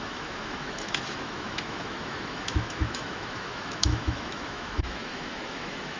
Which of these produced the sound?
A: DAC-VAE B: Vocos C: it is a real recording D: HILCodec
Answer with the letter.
A